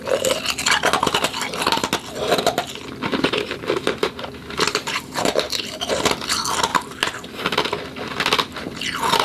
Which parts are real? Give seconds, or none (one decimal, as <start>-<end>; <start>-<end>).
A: 0.0-3.1; 5.9-9.2